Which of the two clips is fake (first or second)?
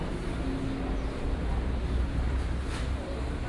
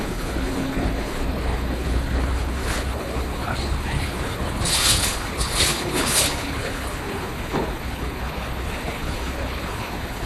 second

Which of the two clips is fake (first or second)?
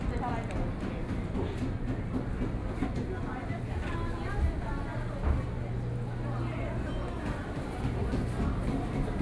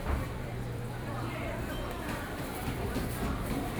second